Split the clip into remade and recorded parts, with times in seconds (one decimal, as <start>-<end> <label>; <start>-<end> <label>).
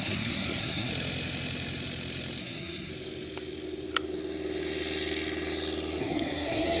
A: 0.0-0.9 remade; 0.9-2.4 recorded; 2.4-2.9 remade; 2.9-6.0 recorded; 6.0-6.8 remade